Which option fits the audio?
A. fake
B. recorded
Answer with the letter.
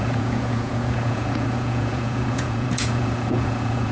A